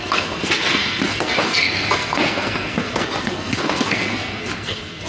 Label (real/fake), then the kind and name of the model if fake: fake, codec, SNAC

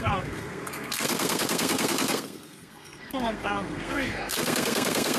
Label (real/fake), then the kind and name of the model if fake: fake, codec, SNAC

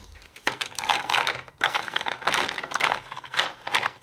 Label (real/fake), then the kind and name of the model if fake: fake, codec, SNAC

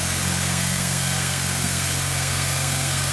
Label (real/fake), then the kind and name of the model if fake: fake, codec, SNAC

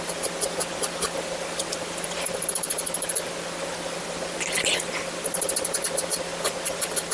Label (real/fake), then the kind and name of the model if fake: real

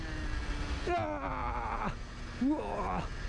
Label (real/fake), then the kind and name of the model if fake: real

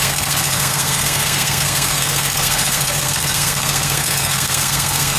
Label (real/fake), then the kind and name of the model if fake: fake, codec, SNAC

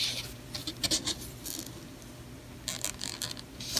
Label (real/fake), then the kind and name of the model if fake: real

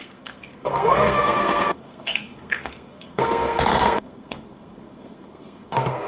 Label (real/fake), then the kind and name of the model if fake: fake, codec, SNAC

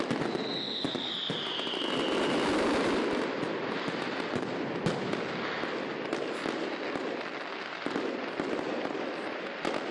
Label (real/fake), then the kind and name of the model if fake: real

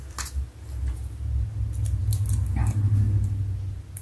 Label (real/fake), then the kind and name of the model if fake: real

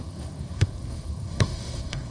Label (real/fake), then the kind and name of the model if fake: fake, codec, SNAC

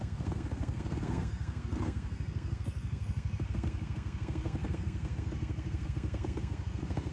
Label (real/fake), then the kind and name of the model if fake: fake, codec, SNAC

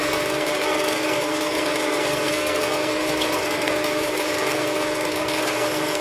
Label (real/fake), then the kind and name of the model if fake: fake, codec, SNAC